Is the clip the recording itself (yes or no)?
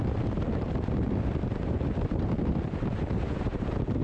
no